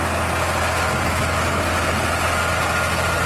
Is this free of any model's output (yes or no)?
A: yes